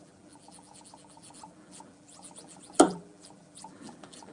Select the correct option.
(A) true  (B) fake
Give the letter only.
B